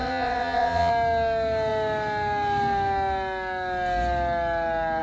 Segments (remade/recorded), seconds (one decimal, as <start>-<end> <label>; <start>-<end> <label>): 0.0-0.9 remade; 0.9-5.0 recorded